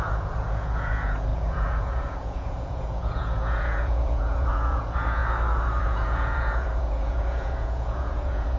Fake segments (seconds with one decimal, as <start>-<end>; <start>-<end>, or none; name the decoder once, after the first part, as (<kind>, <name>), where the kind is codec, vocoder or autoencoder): 0.0-5.2 (vocoder, Vocos); 5.8-8.6